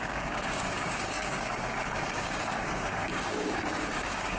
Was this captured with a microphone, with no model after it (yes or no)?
no